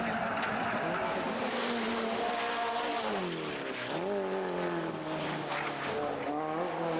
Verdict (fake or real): real